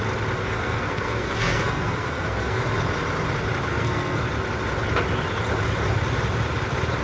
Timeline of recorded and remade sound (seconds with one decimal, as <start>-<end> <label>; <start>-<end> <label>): 0.0-0.4 recorded; 0.4-2.6 remade; 2.6-3.7 recorded; 3.7-4.2 remade; 4.2-7.0 recorded